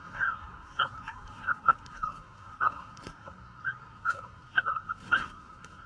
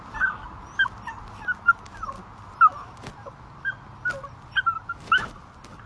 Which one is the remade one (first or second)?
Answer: first